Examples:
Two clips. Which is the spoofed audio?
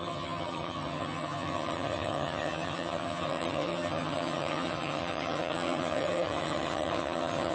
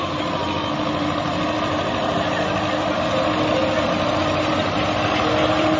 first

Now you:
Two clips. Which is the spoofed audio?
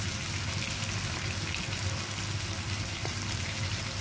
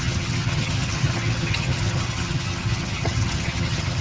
second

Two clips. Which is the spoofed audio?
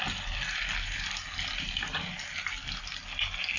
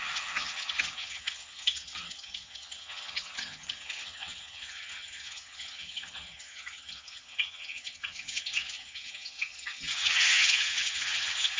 second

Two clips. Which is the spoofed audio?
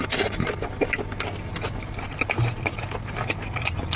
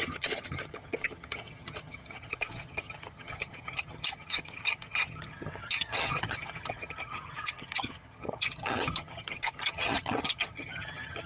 second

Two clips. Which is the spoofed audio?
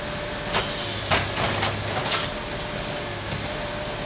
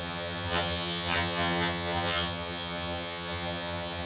second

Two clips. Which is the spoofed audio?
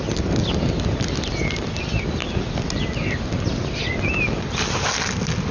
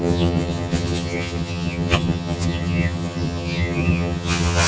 second